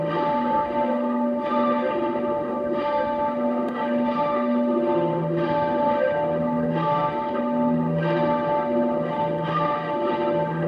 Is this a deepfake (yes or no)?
yes